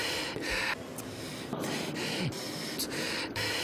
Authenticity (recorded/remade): recorded